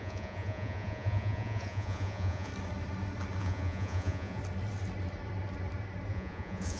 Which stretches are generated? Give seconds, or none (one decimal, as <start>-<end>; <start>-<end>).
0.0-2.5; 3.4-4.4; 6.1-6.8